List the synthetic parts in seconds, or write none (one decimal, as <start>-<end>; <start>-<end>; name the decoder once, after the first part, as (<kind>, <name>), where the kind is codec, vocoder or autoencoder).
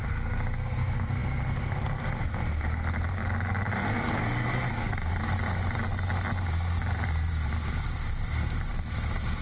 6.8-8.7 (vocoder, BigVGAN v2)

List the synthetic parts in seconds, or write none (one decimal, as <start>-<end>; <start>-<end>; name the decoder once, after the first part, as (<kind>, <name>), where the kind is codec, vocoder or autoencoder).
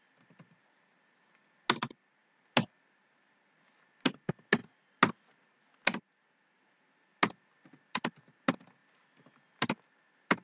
none